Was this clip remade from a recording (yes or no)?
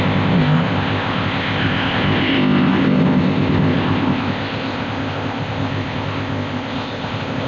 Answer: yes